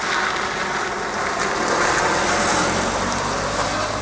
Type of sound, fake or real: real